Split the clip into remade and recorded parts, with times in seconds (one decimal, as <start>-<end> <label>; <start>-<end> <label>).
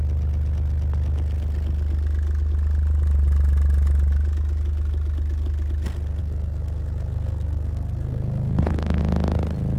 0.0-6.2 recorded; 6.2-9.0 remade; 9.0-9.8 recorded